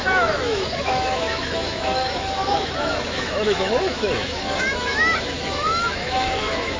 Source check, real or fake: fake